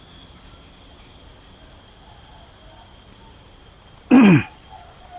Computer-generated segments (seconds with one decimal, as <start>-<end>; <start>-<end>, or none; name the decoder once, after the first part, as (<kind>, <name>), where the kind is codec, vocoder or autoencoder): none